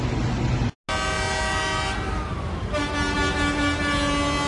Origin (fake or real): real